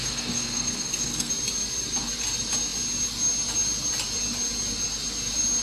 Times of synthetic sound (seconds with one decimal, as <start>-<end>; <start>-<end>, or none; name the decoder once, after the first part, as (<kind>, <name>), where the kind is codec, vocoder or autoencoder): 0.0-1.3 (codec, SNAC)